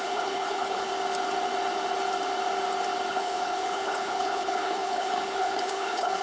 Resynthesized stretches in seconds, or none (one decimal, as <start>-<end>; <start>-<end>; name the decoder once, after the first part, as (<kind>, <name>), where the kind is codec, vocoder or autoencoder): 0.0-0.9 (codec, HILCodec); 3.1-6.2